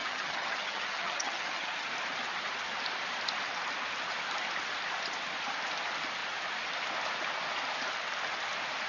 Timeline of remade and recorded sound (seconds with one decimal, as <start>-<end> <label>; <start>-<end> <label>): 0.0-1.9 remade; 1.9-8.9 recorded